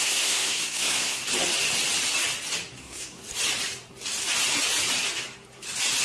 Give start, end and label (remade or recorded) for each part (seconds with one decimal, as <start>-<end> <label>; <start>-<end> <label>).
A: 0.0-1.2 remade; 1.2-2.8 recorded; 2.8-3.2 remade; 3.2-6.0 recorded